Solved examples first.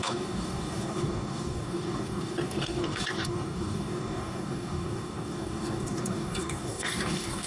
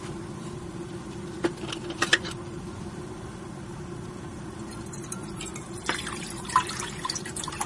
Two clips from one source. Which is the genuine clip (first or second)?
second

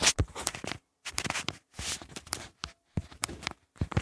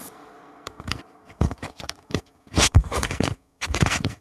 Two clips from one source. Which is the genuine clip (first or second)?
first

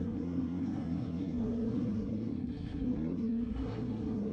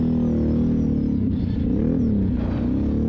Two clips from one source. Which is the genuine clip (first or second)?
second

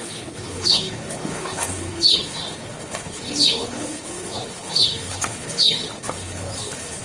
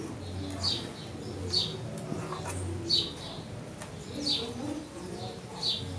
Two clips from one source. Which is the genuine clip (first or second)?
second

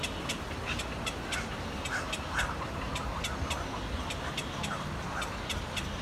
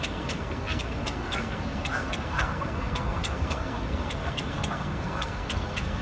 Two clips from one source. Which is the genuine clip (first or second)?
first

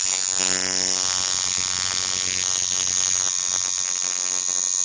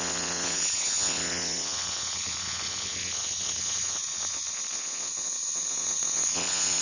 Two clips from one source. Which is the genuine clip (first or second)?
first